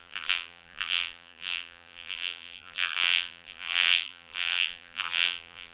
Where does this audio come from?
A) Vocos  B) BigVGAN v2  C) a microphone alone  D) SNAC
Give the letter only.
B